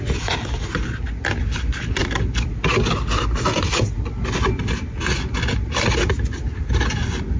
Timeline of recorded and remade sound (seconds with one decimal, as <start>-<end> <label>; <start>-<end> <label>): 0.0-7.4 recorded